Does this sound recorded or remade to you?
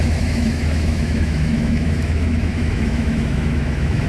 remade